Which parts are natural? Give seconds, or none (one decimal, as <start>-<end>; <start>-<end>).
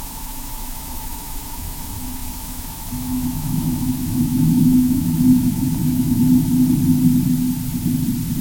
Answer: 6.2-8.4